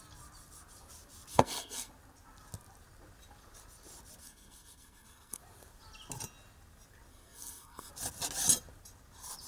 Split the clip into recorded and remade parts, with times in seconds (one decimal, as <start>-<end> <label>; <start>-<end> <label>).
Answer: 0.0-1.3 recorded; 1.3-1.9 remade; 1.9-4.2 recorded; 4.2-5.4 remade; 5.4-7.1 recorded; 7.1-7.9 remade; 7.9-9.5 recorded